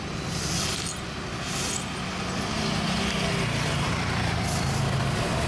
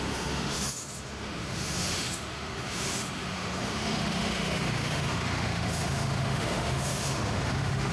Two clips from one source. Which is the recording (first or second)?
first